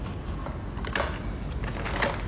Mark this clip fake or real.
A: real